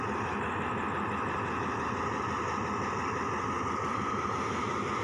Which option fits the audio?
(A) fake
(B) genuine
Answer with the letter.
B